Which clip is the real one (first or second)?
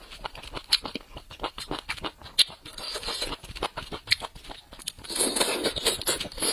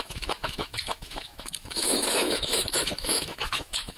first